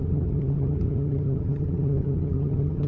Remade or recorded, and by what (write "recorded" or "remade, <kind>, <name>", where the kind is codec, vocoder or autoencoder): remade, vocoder, HiFi-GAN